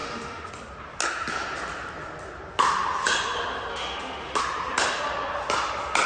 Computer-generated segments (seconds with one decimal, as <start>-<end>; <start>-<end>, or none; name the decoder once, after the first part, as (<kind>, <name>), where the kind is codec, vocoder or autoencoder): 0.0-0.5 (autoencoder, DAC-VAE); 3.7-4.4

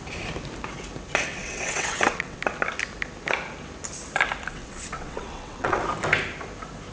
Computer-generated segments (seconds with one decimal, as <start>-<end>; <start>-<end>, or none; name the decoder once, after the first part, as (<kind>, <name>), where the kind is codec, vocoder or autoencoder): 1.3-2.4 (vocoder, WaveNeXt); 4.5-5.8

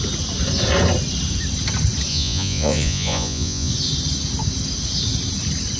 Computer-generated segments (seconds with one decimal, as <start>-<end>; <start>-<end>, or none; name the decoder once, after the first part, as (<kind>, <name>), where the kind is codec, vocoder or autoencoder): 2.1-3.7 (vocoder, Vocos)

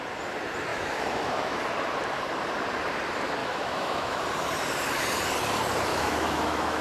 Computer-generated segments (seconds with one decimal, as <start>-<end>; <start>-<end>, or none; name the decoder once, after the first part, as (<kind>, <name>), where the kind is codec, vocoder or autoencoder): 0.7-1.6 (autoencoder, DAC-VAE); 3.4-4.2; 5.9-6.8

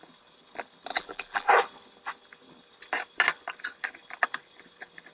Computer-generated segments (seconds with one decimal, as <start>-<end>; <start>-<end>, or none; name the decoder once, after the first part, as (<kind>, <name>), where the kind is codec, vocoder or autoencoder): 0.9-1.5 (vocoder, BigVGAN v2)

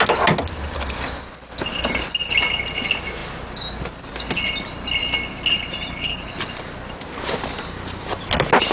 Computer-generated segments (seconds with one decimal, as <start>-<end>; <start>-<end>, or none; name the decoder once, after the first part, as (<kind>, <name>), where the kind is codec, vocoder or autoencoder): none

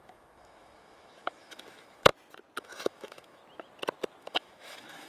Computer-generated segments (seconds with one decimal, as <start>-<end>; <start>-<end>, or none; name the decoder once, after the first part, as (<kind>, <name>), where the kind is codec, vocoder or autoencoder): 0.0-2.1 (autoencoder, DAC-VAE); 2.6-3.4; 4.2-5.1